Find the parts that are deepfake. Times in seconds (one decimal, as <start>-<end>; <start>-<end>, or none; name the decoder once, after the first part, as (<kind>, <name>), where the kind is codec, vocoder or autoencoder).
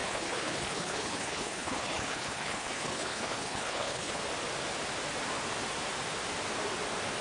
0.0-4.2 (codec, HILCodec)